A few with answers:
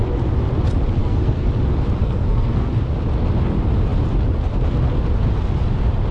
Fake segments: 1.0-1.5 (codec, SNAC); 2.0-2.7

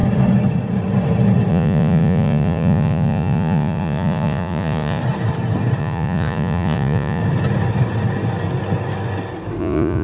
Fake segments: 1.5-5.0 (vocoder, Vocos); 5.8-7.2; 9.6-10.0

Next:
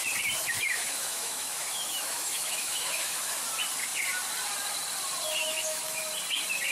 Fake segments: 0.4-3.3 (autoencoder, DAC-VAE); 5.4-6.0